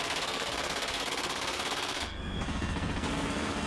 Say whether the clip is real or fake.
fake